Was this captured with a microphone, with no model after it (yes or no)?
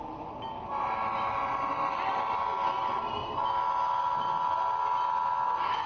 yes